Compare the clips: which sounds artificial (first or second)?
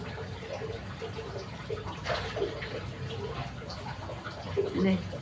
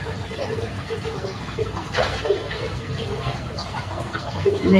second